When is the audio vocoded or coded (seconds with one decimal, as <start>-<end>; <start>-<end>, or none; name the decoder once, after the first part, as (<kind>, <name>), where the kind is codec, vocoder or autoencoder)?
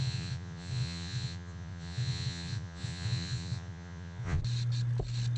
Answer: 0.0-4.4 (vocoder, Vocos)